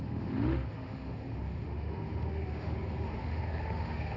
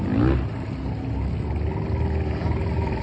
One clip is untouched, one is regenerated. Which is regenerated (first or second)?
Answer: first